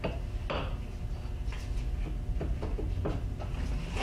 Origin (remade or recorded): recorded